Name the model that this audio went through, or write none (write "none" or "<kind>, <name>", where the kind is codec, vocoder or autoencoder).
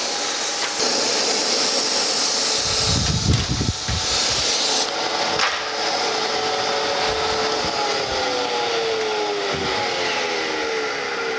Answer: none